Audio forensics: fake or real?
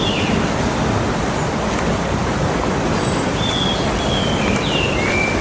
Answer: real